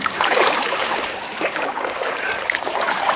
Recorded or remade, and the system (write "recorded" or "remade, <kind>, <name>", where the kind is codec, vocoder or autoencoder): remade, codec, DAC